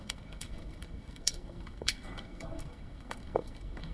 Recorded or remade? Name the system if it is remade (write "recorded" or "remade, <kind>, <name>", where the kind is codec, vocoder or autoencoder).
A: remade, codec, SNAC